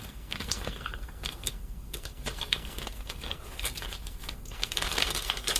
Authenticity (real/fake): fake